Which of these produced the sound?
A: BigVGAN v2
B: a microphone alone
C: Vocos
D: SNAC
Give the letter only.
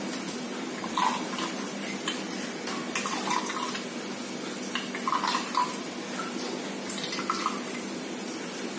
B